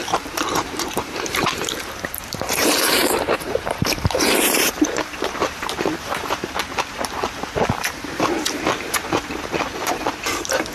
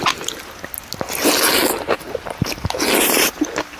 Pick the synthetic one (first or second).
first